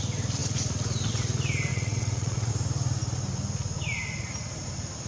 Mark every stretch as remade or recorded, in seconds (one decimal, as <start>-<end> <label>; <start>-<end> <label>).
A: 0.0-1.7 recorded; 1.7-2.5 remade; 2.5-5.1 recorded